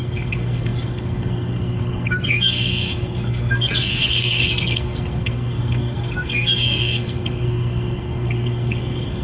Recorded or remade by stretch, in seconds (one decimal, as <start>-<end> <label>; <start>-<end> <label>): 0.0-9.2 remade